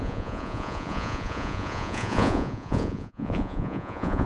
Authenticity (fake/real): fake